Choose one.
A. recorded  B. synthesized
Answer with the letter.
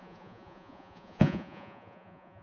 B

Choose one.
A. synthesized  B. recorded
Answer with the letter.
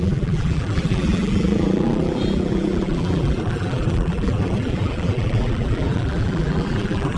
A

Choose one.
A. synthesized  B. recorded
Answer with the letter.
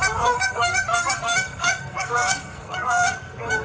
A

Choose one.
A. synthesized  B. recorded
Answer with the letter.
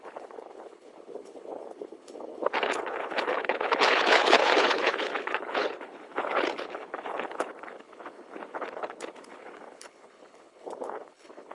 A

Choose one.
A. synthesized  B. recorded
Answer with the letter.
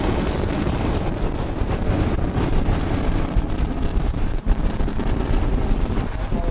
B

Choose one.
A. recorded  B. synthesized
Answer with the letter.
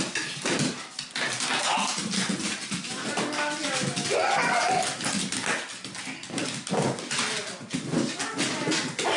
A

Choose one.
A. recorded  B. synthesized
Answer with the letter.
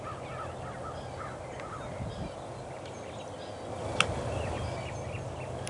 A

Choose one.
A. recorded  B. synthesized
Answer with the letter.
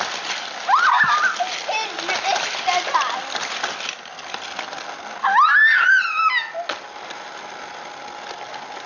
A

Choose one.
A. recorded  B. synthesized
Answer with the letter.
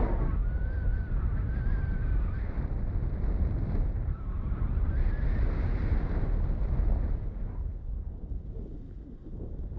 A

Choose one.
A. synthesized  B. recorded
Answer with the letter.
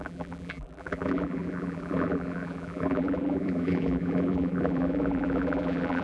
A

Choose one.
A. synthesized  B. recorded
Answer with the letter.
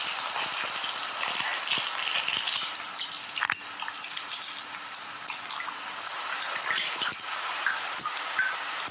B